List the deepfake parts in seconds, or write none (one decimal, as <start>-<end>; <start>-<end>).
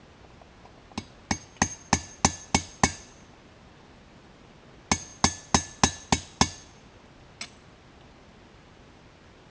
none